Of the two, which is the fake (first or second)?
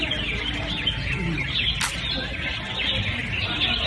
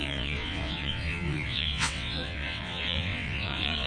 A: second